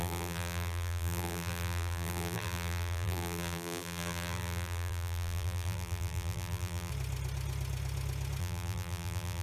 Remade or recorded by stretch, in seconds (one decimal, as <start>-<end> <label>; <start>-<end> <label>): 0.0-6.9 remade; 6.9-8.4 recorded; 8.4-9.4 remade